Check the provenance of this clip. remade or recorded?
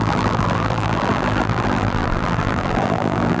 remade